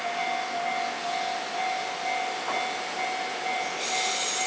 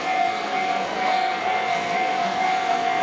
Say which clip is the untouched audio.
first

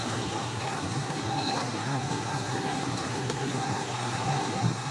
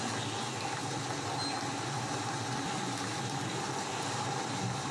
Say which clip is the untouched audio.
second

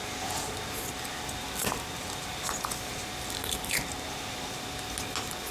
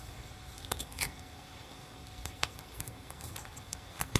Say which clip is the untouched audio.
first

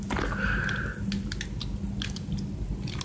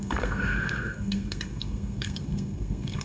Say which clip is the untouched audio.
first